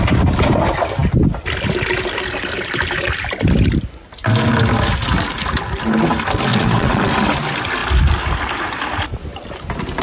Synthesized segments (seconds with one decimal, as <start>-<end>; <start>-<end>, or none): 6.5-7.1